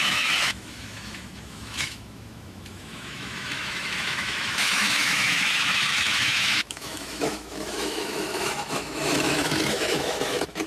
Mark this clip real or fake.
fake